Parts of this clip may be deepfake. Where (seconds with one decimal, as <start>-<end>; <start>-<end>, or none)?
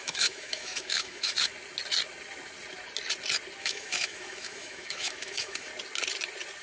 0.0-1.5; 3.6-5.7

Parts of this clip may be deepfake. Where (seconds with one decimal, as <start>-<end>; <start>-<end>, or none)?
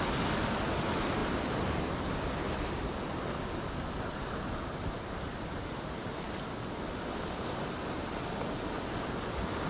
none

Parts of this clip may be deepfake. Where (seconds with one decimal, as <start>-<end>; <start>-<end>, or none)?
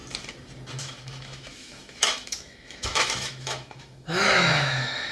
0.8-5.1